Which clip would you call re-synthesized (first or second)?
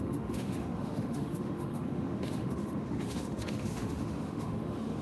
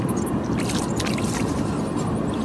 first